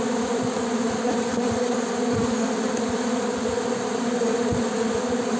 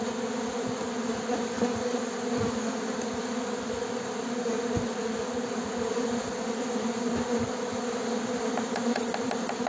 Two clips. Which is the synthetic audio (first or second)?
first